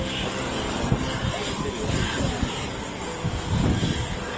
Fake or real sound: real